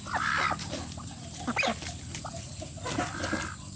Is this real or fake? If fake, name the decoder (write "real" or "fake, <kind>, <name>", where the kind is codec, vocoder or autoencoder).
real